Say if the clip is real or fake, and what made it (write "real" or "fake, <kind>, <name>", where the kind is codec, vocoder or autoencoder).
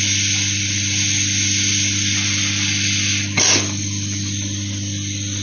real